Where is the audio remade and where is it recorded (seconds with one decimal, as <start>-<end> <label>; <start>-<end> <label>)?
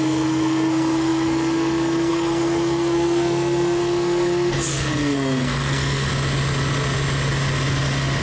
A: 0.0-6.1 remade; 6.1-8.2 recorded